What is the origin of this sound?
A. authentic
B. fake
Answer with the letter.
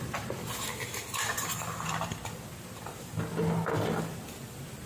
A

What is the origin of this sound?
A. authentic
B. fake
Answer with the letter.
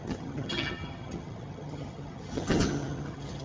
B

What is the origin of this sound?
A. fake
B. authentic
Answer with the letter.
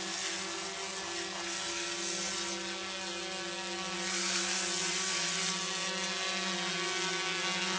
B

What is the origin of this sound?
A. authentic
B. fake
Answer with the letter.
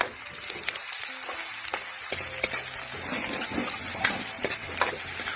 A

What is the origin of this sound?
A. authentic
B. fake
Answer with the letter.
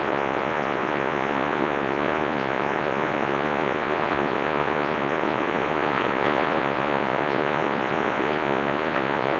B